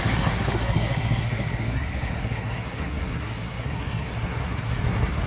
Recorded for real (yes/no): no